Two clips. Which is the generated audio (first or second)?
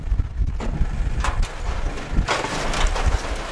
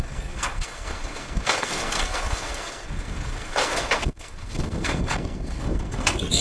second